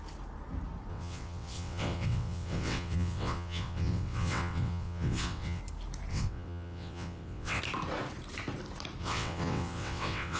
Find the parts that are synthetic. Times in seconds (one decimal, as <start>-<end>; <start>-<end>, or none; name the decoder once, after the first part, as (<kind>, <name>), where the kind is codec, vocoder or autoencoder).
0.9-5.6 (vocoder, WaveNeXt); 6.1-7.6; 9.0-10.4